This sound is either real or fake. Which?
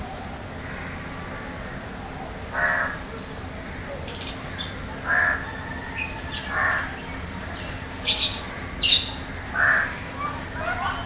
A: real